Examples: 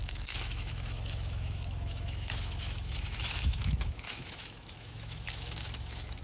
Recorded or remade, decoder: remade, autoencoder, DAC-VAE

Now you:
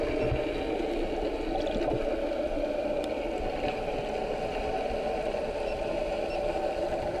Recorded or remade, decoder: recorded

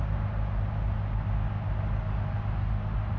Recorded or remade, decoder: recorded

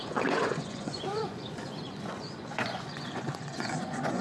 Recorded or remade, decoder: remade, vocoder, Vocos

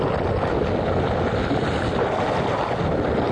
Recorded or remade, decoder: recorded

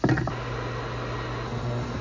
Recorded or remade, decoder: recorded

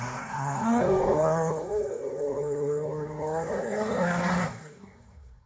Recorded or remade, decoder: remade, codec, SNAC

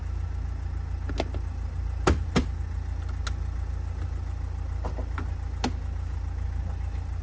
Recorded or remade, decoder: recorded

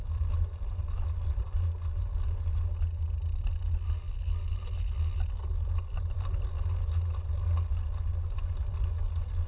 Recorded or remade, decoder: recorded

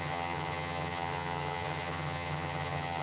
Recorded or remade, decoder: remade, vocoder, HiFi-GAN